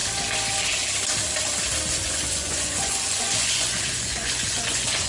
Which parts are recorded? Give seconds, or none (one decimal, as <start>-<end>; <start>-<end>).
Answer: 0.0-1.9